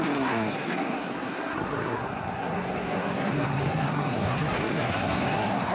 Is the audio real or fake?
fake